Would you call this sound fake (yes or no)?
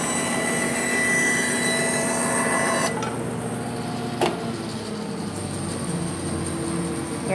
no